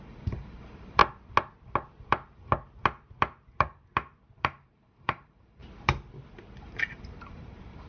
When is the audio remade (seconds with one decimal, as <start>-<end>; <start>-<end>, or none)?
0.0-1.0; 4.4-5.6; 6.5-7.9